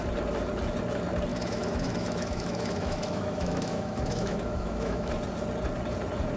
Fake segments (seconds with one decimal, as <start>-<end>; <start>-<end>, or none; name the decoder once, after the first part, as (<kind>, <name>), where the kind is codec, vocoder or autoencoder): 1.3-5.1 (autoencoder, DAC-VAE)